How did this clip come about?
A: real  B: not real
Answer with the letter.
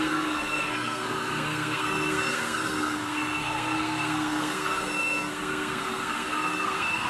B